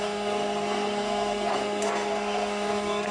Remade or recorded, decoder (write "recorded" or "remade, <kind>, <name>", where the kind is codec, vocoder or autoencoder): remade, codec, SNAC